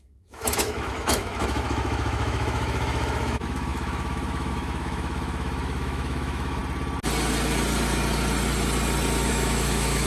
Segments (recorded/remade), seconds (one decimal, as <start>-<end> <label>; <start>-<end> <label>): 0.0-6.6 remade; 6.6-9.3 recorded; 9.3-10.1 remade

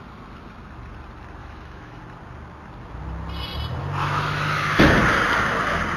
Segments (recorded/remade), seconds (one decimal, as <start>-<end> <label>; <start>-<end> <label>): 0.0-1.4 recorded; 1.4-2.0 remade; 2.0-4.0 recorded; 4.0-4.8 remade; 4.8-6.0 recorded